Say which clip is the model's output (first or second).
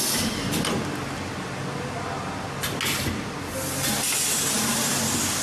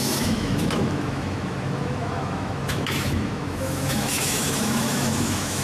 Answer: second